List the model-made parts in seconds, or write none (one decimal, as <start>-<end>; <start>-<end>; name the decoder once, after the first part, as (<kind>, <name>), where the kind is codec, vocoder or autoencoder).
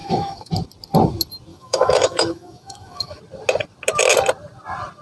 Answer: 0.0-0.5 (autoencoder, DAC-VAE); 1.5-3.2